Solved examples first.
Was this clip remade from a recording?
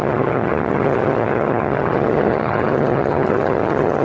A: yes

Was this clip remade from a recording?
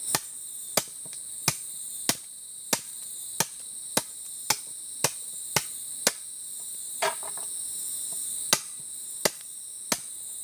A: no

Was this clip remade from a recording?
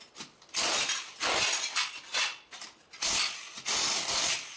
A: no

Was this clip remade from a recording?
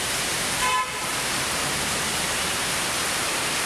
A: yes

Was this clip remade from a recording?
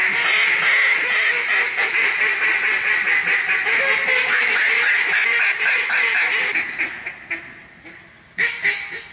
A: no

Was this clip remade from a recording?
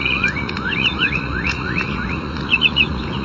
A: yes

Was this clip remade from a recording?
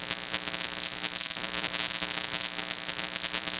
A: yes